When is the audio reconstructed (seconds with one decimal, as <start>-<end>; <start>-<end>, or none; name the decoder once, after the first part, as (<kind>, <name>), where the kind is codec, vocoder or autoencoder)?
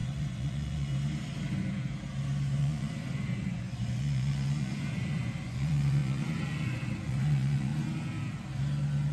0.0-0.9 (vocoder, Vocos); 2.6-7.7